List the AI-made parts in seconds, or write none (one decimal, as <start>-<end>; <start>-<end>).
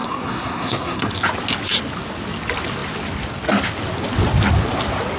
0.0-1.1